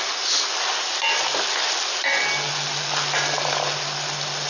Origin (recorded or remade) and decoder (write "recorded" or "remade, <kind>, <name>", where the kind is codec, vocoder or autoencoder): recorded